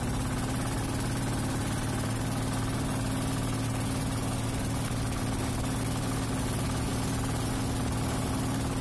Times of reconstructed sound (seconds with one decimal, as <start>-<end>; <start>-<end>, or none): none

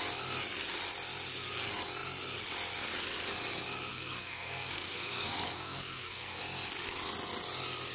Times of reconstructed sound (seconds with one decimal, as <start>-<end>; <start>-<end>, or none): 3.9-6.4

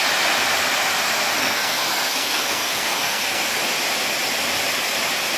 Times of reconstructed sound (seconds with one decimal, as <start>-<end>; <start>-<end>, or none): 1.4-3.6

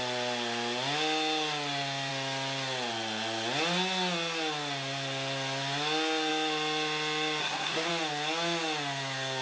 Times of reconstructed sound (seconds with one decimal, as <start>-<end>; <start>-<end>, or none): 7.4-7.9

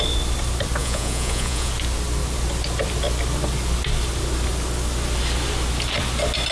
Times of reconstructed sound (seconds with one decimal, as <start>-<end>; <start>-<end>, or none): 0.8-1.7

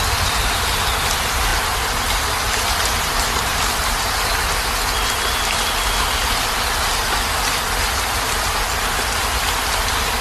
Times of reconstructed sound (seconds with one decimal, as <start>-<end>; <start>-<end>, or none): none